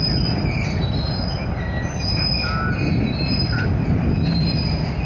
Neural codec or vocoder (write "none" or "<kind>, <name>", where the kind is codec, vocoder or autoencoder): none